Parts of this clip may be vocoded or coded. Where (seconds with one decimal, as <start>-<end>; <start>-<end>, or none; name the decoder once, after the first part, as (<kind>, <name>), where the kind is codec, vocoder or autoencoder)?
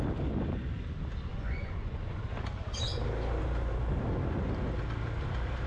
1.3-2.2 (vocoder, Vocos)